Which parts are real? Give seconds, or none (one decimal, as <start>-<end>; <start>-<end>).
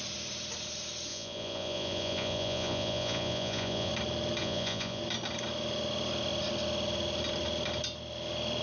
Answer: 0.0-1.1; 3.9-4.4; 5.0-8.6